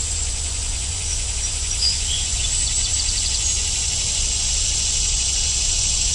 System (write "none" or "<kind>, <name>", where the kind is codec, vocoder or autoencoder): vocoder, Vocos